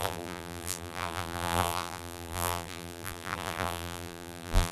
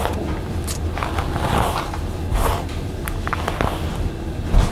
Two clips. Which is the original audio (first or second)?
second